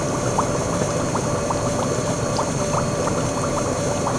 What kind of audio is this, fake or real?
fake